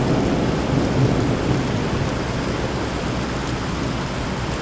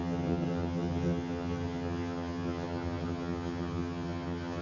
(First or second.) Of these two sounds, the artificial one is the second